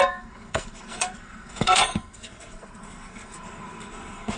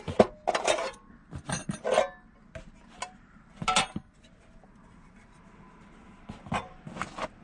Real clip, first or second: second